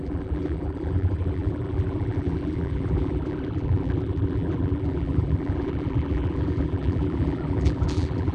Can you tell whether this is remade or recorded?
remade